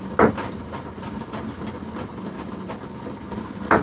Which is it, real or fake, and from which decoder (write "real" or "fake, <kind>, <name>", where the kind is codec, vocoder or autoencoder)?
real